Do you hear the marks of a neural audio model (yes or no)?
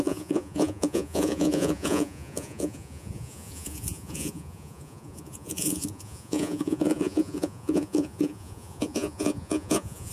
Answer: yes